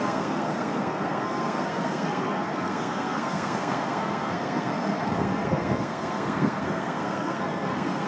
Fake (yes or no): yes